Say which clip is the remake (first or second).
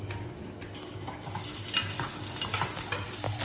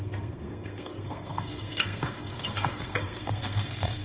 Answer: second